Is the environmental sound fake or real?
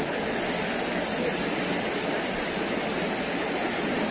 real